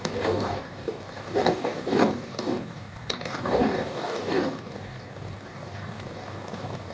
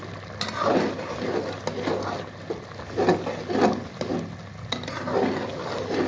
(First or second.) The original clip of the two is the second